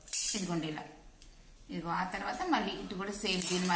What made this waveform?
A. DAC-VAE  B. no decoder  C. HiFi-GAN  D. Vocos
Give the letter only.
D